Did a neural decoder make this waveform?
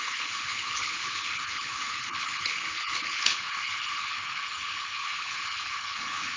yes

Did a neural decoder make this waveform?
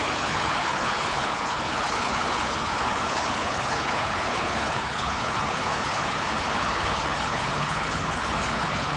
yes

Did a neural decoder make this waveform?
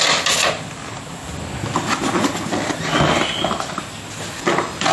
no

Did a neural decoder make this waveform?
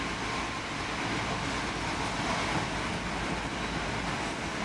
no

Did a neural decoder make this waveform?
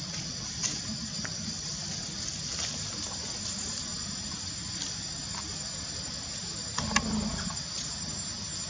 no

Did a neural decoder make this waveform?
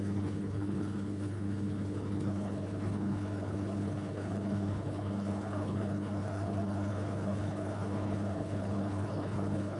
yes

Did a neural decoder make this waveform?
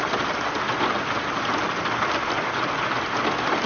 no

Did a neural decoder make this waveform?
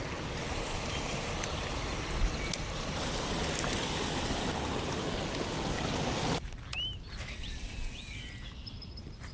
no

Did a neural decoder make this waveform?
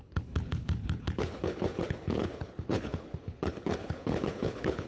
yes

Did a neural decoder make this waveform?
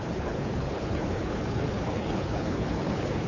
yes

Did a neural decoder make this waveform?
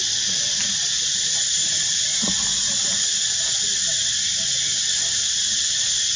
no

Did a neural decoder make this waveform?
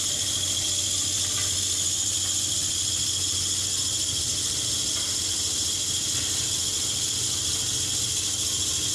no